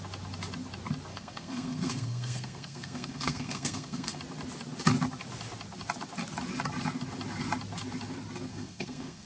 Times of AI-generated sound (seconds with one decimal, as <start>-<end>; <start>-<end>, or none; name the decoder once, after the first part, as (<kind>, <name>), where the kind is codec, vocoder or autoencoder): 1.1-4.2 (codec, SNAC); 8.5-9.3